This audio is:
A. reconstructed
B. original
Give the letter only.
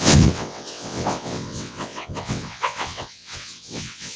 A